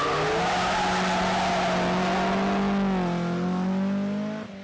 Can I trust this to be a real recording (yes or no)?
yes